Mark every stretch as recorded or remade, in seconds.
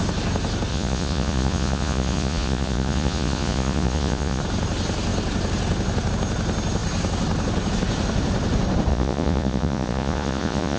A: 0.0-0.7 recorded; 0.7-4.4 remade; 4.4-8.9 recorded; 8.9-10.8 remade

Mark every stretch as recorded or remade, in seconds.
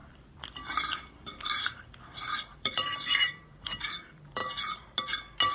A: 0.0-4.4 remade; 4.4-5.5 recorded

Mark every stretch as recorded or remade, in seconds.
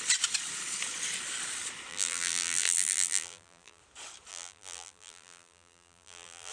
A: 0.0-1.9 recorded; 1.9-3.8 remade; 3.8-4.3 recorded; 4.3-6.5 remade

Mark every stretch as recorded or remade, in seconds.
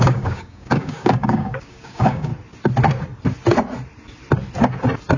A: 0.0-2.3 remade; 2.3-5.2 recorded